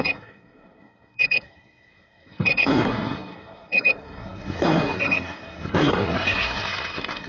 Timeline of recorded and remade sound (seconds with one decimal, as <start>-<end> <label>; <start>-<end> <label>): 0.0-7.3 remade